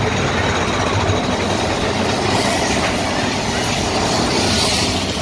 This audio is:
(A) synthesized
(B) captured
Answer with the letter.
B